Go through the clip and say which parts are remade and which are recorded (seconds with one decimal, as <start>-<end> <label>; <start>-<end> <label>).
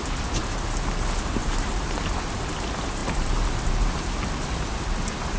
0.0-1.4 recorded; 1.4-2.1 remade; 2.1-3.0 recorded; 3.0-3.7 remade; 3.7-5.4 recorded